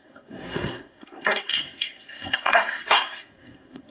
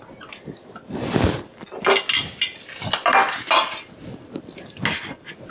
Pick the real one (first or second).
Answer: second